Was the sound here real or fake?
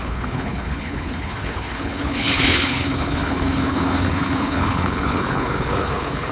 fake